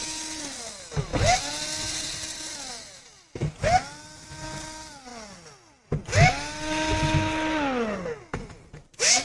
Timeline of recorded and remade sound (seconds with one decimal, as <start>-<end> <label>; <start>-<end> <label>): 0.0-9.2 recorded